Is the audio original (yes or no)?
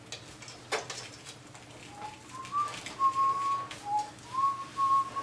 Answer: yes